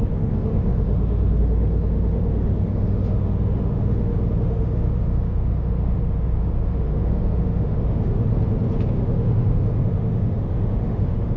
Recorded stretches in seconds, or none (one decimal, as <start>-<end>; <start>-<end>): 8.3-8.9